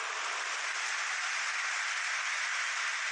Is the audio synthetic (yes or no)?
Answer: yes